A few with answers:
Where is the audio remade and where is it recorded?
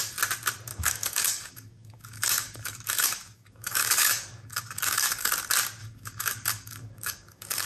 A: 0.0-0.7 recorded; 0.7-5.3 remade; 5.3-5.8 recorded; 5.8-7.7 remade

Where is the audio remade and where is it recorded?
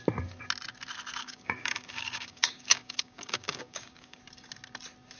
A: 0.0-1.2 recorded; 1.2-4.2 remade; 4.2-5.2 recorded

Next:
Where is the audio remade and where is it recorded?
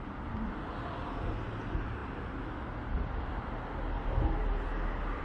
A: 0.0-5.2 recorded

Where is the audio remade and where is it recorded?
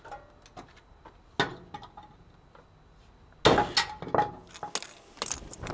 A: 0.0-5.7 recorded